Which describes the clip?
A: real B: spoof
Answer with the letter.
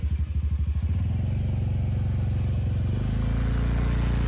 A